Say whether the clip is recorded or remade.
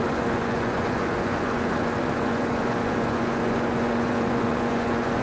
remade